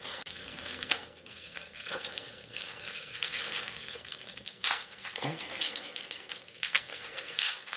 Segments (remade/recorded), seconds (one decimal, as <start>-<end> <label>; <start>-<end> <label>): 0.0-7.8 remade